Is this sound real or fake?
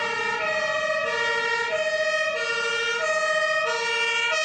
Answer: real